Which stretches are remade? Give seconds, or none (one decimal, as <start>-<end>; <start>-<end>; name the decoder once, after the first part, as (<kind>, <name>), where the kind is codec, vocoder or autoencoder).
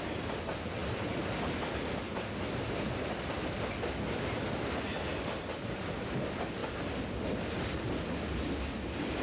none